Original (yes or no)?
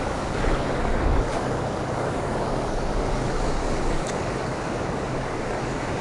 no